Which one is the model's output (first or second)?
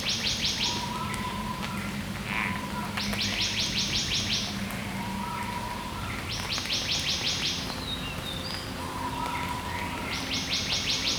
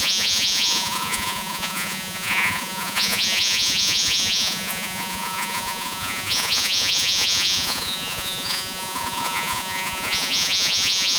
second